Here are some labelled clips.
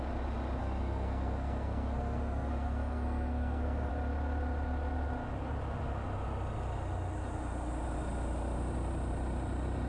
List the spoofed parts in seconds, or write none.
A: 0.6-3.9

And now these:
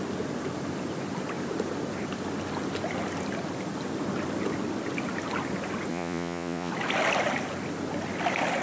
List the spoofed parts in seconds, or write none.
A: 5.9-6.7

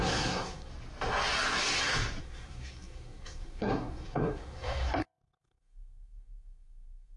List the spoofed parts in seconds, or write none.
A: 0.0-0.7; 2.2-7.2

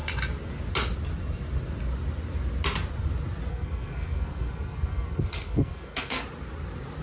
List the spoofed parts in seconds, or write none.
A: 3.5-6.2

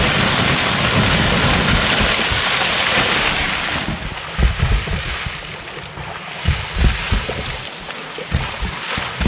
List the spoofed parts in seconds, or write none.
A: 8.0-8.7

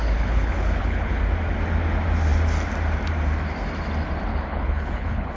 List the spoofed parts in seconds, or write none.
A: 0.0-1.2; 4.3-5.4